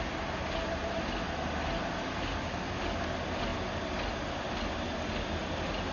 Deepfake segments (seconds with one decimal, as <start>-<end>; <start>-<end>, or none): none